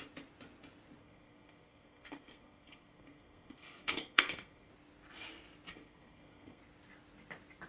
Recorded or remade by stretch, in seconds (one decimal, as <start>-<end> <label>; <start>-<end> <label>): 0.0-1.0 recorded; 1.0-4.7 remade; 4.7-5.7 recorded; 5.7-6.6 remade; 6.6-7.7 recorded